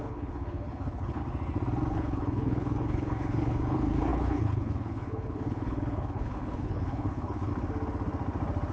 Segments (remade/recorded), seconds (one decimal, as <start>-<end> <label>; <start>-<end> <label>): 0.0-1.2 remade; 1.2-1.9 recorded; 1.9-7.5 remade; 7.5-8.7 recorded